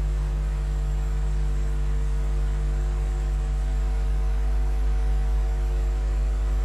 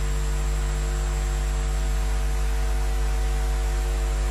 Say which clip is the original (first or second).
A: second